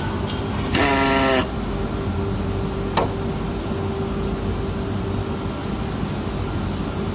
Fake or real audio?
real